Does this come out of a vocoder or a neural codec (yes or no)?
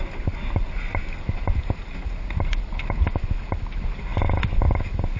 no